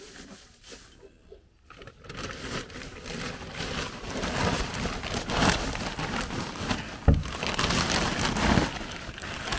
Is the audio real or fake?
real